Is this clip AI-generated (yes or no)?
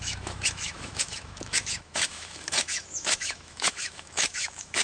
yes